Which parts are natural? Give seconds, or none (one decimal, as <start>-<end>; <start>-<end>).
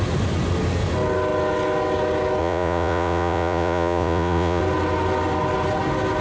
0.0-2.4; 4.6-6.2